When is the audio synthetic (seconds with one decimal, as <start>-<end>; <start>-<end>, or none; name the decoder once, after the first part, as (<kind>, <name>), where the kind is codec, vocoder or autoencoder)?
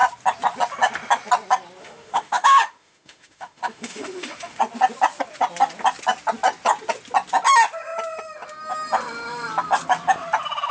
1.8-4.6 (autoencoder, DAC-VAE)